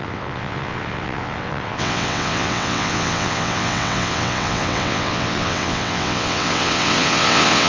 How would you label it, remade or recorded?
remade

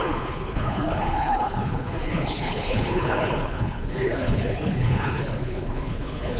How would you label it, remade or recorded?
remade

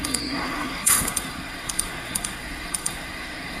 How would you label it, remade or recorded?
remade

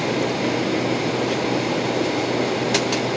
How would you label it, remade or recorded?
recorded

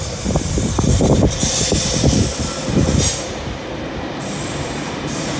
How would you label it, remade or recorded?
recorded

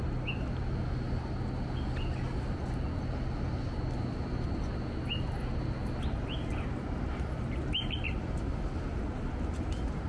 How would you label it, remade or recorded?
recorded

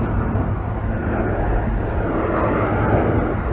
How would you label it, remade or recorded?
recorded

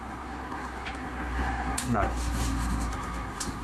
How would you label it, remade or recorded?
remade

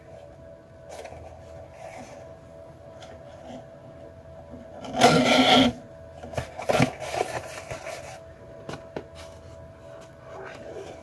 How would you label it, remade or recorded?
recorded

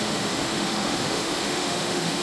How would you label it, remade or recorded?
remade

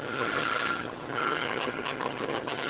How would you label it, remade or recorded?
remade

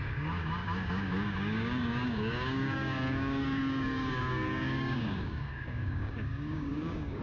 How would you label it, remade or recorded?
remade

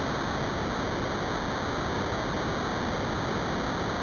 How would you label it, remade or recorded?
recorded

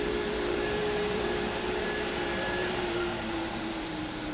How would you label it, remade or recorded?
remade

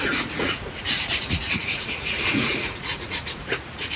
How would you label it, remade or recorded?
remade